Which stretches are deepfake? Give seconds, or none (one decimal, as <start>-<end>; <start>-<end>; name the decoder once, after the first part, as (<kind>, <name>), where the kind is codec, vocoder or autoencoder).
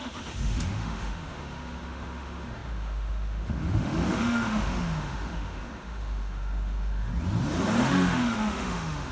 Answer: 0.0-7.1 (autoencoder, DAC-VAE); 7.8-9.1